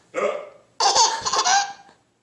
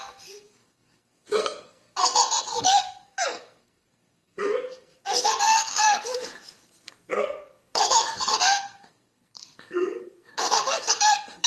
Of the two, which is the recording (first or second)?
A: first